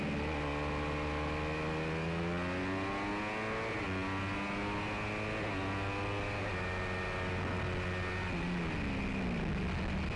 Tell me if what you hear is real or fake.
real